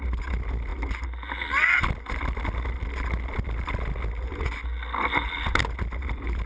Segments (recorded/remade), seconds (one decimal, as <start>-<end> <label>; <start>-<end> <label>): 0.0-6.5 recorded